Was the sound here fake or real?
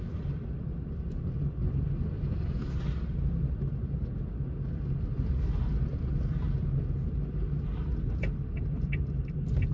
real